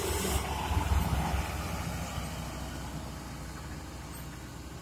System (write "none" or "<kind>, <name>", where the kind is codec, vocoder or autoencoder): none